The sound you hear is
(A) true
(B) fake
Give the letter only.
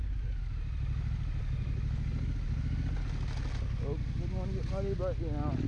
A